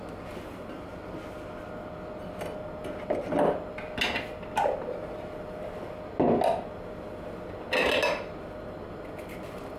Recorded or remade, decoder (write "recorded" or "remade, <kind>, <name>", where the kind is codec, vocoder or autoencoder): recorded